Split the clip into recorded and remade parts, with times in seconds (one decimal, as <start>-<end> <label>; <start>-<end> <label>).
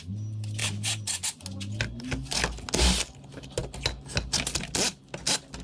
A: 0.0-5.6 recorded